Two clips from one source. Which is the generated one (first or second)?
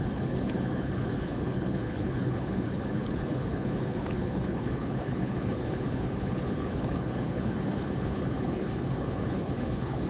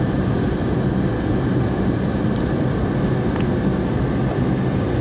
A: first